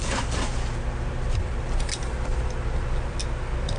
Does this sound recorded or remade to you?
recorded